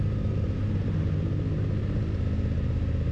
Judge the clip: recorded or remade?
recorded